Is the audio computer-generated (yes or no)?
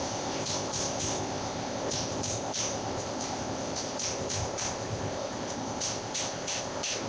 yes